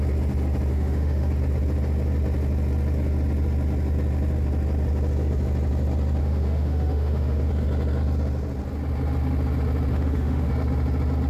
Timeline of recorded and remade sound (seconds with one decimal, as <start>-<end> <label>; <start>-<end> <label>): 0.0-0.7 recorded; 0.7-1.3 remade; 1.3-6.2 recorded; 6.2-7.5 remade; 7.5-9.9 recorded; 9.9-10.5 remade; 10.5-11.3 recorded